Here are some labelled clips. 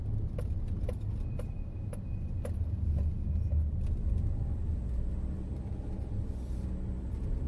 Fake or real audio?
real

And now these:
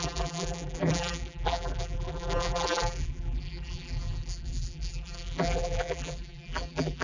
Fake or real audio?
fake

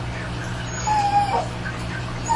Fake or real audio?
real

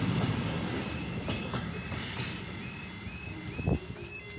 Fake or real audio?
real